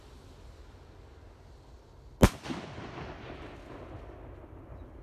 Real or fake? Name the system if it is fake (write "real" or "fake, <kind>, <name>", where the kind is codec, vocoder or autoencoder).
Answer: real